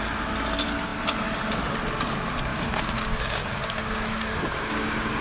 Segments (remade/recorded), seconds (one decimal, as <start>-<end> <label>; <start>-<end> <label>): 0.0-2.5 recorded; 2.5-5.2 remade